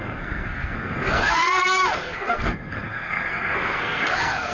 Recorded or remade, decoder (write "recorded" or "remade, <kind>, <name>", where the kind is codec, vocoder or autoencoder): remade, codec, SNAC